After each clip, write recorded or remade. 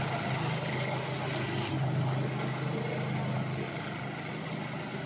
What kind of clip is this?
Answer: recorded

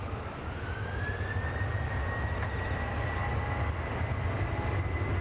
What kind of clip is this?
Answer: recorded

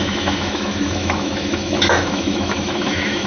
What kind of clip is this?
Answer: remade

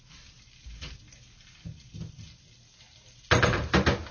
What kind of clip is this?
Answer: recorded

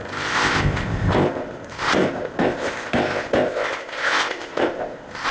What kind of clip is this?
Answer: remade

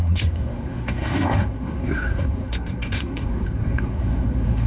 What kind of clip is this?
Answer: remade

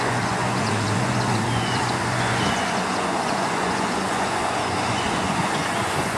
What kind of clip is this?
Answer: remade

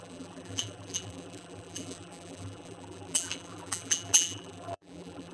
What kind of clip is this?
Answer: remade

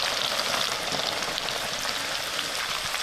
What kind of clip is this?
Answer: recorded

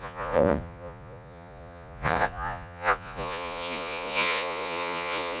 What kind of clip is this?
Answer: remade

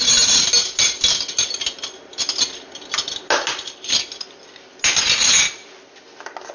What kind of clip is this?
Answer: recorded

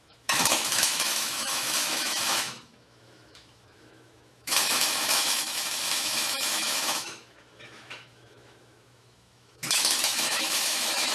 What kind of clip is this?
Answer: remade